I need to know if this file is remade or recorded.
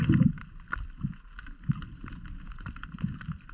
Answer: recorded